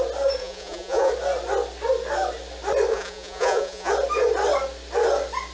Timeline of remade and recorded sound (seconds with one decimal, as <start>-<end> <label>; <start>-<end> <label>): 0.0-0.4 recorded; 0.4-1.1 remade; 1.1-2.9 recorded; 2.9-3.9 remade; 3.9-5.5 recorded